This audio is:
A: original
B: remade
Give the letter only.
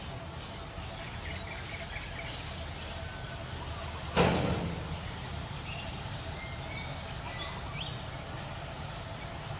A